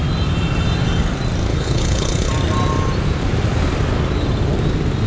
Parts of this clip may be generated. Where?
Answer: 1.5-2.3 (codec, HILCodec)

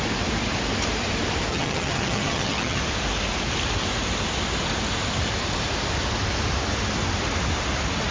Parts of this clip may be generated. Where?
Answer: 1.5-2.8 (vocoder, HiFi-GAN)

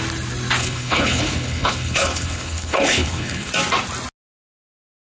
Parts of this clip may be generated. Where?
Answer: 0.6-3.5 (codec, HILCodec)

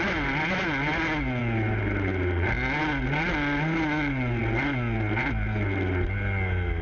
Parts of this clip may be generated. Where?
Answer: none

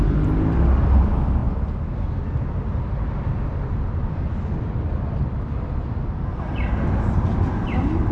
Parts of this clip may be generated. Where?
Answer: none

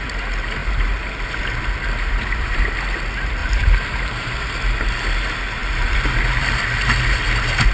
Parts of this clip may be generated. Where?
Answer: 3.4-4.5 (vocoder, BigVGAN v2)

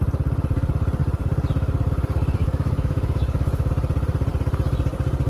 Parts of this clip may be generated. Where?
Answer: 2.4-3.7 (autoencoder, DAC-VAE)